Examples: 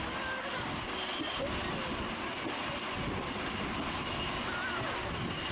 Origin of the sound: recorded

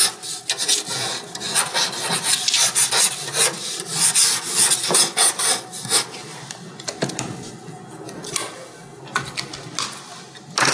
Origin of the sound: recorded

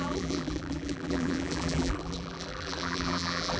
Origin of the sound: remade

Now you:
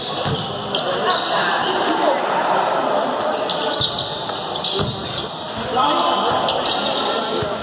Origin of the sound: recorded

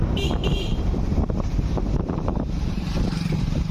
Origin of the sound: remade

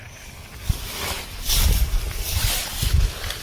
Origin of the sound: recorded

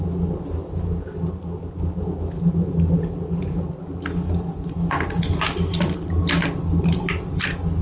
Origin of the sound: recorded